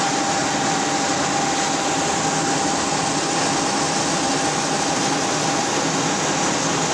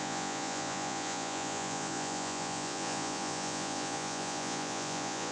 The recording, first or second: first